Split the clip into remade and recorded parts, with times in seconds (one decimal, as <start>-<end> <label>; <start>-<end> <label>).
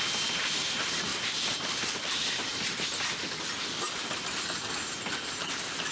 0.0-1.1 recorded; 1.1-2.5 remade; 2.5-5.9 recorded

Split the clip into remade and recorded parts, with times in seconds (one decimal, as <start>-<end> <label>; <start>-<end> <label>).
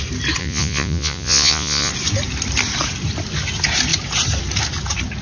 0.0-0.4 recorded; 0.4-1.9 remade; 1.9-5.2 recorded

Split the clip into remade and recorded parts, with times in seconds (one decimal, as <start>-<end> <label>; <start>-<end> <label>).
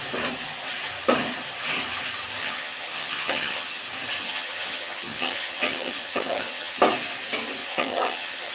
0.0-2.4 recorded; 2.4-3.8 remade; 3.8-4.2 recorded; 4.2-6.8 remade; 6.8-7.6 recorded; 7.6-8.5 remade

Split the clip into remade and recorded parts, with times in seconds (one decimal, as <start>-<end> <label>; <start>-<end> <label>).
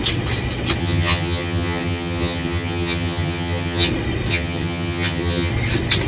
0.0-0.8 recorded; 0.8-3.9 remade; 3.9-4.3 recorded; 4.3-5.5 remade; 5.5-6.1 recorded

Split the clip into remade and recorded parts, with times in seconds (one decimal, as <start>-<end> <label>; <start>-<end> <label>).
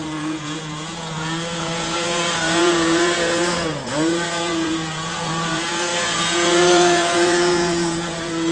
0.0-8.5 remade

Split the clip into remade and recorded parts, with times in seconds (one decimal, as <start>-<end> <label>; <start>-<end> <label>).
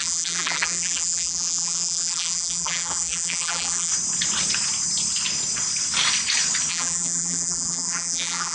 0.0-3.9 remade; 3.9-6.7 recorded; 6.7-8.5 remade